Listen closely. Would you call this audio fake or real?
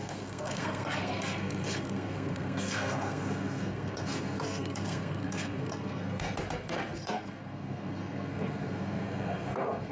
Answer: fake